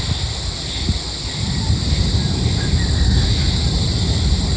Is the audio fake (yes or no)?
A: no